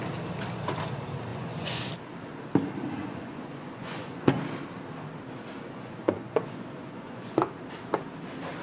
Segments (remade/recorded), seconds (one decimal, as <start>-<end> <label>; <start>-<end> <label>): 0.0-1.3 recorded; 1.3-1.9 remade; 1.9-2.9 recorded; 2.9-4.4 remade; 4.4-5.5 recorded; 5.5-7.5 remade; 7.5-8.6 recorded